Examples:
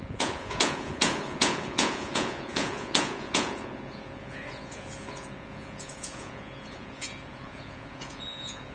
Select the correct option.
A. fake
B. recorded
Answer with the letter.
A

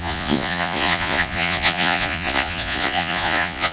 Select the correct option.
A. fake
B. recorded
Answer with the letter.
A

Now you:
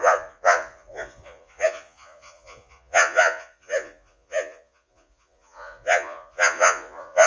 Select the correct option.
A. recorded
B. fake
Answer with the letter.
B